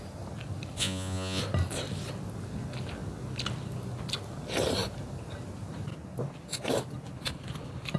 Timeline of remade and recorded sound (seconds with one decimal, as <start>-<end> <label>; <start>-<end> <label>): 0.0-0.8 recorded; 0.8-1.4 remade; 1.4-8.0 recorded